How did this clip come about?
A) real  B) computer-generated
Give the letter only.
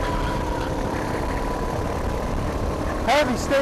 A